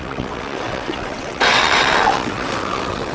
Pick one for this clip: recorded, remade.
remade